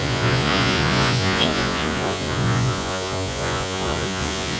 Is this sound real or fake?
fake